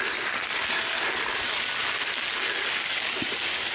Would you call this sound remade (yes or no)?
no